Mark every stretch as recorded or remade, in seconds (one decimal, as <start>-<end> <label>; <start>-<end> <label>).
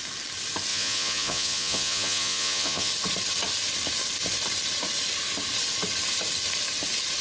0.0-0.7 recorded; 0.7-2.9 remade; 2.9-7.2 recorded